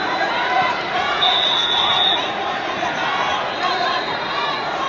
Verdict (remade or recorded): remade